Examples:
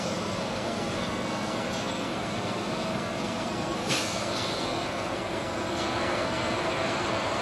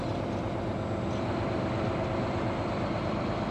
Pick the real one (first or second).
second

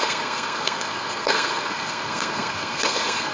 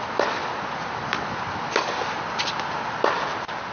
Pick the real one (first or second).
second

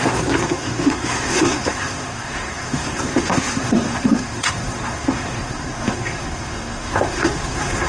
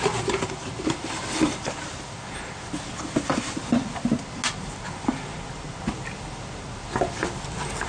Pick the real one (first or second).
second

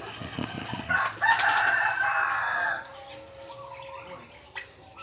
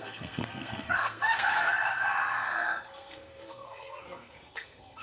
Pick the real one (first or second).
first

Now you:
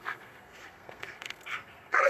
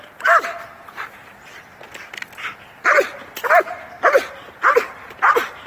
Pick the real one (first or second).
second